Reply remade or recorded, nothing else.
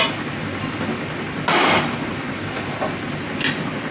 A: recorded